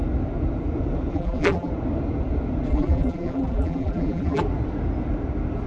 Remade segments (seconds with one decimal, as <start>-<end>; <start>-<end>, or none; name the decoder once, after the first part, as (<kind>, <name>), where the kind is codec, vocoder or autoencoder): 1.1-1.7 (vocoder, BigVGAN v2); 2.7-4.4

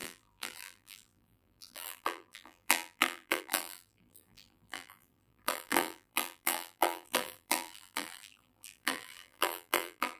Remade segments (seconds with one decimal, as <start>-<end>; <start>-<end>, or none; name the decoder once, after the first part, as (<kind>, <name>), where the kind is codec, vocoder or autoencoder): 0.0-10.2 (vocoder, BigVGAN v2)

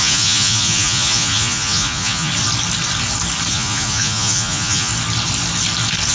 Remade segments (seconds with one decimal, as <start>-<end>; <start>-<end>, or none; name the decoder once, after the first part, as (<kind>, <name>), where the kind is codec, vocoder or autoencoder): 0.0-2.3 (vocoder, Vocos); 3.5-4.9